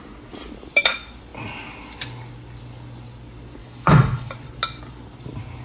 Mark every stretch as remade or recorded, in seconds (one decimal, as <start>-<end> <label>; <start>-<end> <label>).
0.0-3.6 recorded; 3.6-4.3 remade; 4.3-5.6 recorded